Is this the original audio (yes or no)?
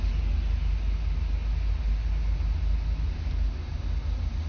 yes